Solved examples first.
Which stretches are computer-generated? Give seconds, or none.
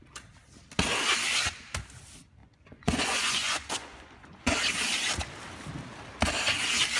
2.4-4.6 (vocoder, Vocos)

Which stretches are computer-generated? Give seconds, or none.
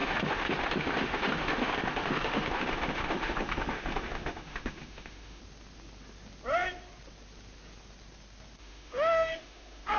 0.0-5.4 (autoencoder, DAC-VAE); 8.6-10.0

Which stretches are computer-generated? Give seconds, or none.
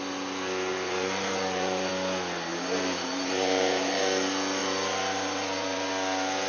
0.7-1.9 (vocoder, BigVGAN v2); 2.5-4.0; 4.6-5.9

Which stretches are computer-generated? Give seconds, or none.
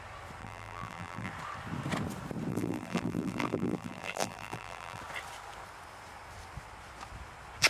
0.4-1.3 (vocoder, BigVGAN v2); 2.5-5.0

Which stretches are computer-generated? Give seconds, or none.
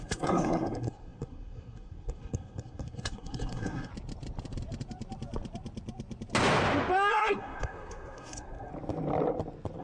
0.0-3.9 (codec, SNAC); 7.1-8.7